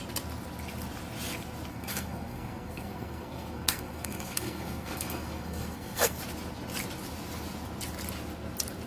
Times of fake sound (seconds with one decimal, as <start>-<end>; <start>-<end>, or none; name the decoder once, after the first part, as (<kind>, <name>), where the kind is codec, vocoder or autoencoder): 1.7-6.2 (codec, SNAC)